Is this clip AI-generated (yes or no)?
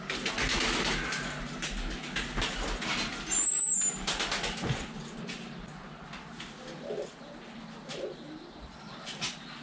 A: no